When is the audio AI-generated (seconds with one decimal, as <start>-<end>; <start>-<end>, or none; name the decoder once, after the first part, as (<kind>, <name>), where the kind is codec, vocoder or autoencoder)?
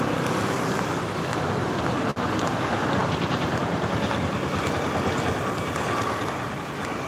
none